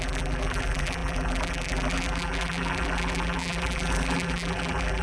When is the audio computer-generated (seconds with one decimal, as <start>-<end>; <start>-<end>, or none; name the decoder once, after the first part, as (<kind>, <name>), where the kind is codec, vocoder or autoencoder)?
0.0-5.0 (vocoder, BigVGAN v2)